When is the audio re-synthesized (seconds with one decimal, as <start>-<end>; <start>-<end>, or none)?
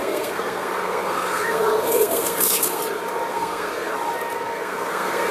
0.0-2.8; 3.3-3.9; 4.3-5.3